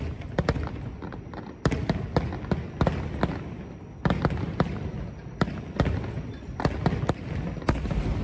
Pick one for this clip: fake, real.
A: real